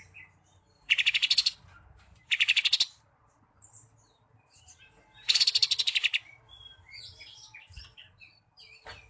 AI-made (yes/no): yes